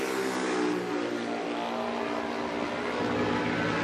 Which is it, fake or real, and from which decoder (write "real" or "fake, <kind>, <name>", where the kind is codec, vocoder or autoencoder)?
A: real